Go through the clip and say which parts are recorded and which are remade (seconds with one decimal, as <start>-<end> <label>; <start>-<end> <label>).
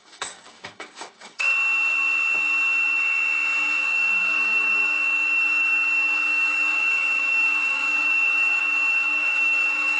0.0-1.5 remade; 1.5-3.8 recorded; 3.8-10.0 remade